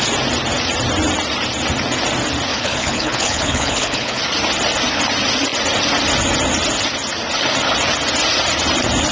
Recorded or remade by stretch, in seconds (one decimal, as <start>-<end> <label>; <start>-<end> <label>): 0.0-2.5 recorded; 2.5-4.2 remade; 4.2-9.1 recorded